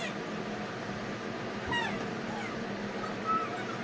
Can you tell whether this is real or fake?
real